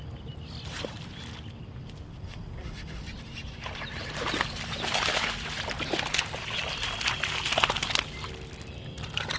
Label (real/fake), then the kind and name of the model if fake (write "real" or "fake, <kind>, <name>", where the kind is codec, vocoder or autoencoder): real